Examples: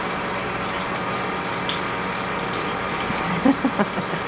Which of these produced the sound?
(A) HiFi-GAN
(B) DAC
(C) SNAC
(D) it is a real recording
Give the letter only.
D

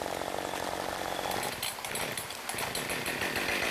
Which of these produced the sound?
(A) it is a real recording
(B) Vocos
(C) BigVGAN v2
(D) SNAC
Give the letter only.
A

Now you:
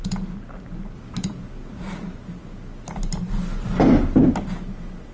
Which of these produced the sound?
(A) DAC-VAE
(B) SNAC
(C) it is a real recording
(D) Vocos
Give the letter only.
C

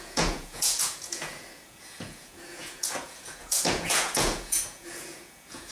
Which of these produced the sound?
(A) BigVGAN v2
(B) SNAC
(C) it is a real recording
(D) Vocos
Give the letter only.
D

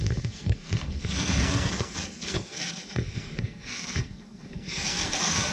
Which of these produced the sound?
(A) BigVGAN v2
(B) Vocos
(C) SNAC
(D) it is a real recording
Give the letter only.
C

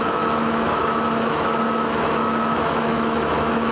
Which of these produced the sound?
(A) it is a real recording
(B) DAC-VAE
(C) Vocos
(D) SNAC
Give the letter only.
B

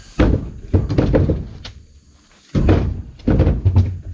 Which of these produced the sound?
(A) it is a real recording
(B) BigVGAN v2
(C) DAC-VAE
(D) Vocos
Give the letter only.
A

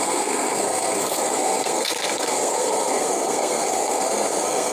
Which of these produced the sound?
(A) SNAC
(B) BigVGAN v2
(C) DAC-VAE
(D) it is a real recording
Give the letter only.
A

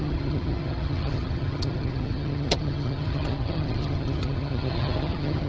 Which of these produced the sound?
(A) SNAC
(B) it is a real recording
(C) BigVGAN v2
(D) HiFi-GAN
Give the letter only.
D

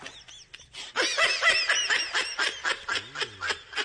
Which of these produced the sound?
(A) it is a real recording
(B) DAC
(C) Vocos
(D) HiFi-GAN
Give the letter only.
A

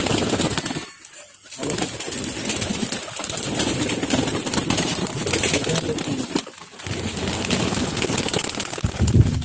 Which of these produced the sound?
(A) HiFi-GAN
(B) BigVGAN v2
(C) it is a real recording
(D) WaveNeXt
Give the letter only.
C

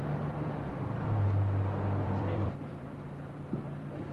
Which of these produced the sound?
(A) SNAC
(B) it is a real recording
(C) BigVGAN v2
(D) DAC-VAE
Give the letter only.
C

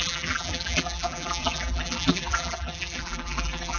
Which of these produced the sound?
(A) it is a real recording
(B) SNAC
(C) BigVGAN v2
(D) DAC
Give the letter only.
C